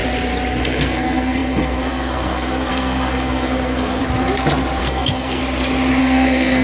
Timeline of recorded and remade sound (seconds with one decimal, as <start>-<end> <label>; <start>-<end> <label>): 0.0-0.6 recorded; 0.6-4.0 remade; 4.0-4.8 recorded; 4.8-5.4 remade; 5.4-6.0 recorded; 6.0-6.6 remade